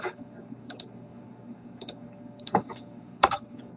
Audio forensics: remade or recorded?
remade